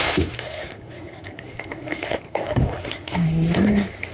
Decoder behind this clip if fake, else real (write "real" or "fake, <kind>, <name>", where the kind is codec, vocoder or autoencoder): fake, codec, SNAC